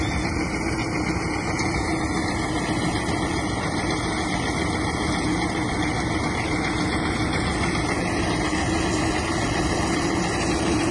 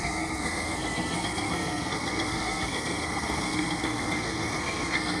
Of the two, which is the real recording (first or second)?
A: first